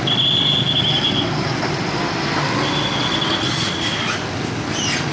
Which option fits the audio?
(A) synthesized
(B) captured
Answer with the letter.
B